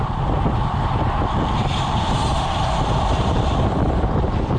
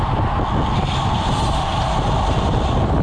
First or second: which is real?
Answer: second